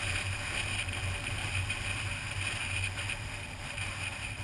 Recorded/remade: remade